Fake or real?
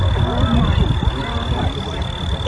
real